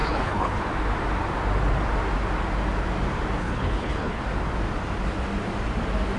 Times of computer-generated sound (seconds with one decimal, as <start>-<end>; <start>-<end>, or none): 0.0-0.6; 3.4-4.2